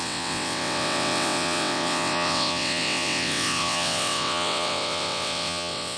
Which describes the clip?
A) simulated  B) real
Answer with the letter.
A